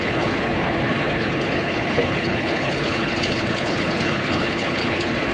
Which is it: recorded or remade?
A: remade